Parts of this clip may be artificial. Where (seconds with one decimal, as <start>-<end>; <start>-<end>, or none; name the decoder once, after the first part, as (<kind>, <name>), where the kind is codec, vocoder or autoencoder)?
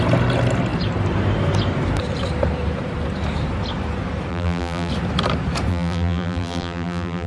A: 4.3-4.9 (vocoder, BigVGAN v2); 5.7-7.3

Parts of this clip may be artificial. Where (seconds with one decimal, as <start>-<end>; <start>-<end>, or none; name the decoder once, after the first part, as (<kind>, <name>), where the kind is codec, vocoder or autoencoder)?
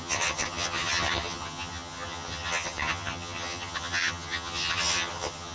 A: 0.0-5.5 (vocoder, HiFi-GAN)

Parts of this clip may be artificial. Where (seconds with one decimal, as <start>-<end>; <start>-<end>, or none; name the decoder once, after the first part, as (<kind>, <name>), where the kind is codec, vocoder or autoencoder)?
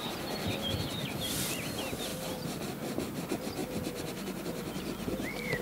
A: 3.6-5.6 (vocoder, BigVGAN v2)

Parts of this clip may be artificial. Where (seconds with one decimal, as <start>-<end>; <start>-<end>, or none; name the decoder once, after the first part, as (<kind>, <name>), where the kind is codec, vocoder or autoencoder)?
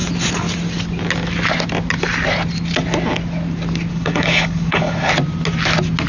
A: 3.9-5.1 (codec, HILCodec)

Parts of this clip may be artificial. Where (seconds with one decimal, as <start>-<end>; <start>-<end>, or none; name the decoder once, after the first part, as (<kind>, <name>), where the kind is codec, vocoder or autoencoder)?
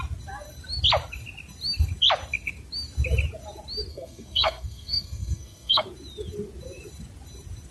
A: 3.9-5.8 (codec, SNAC)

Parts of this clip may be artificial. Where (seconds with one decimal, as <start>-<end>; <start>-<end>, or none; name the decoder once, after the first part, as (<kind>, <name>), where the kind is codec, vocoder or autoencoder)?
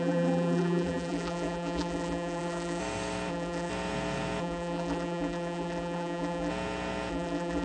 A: 0.0-2.8 (vocoder, BigVGAN v2); 3.3-3.7; 4.4-6.5; 7.1-7.6